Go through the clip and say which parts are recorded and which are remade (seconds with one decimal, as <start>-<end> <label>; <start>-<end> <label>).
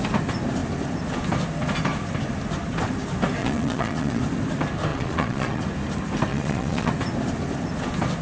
0.0-3.4 recorded; 3.4-4.2 remade; 4.2-4.9 recorded; 4.9-5.6 remade; 5.6-6.3 recorded; 6.3-6.9 remade; 6.9-8.2 recorded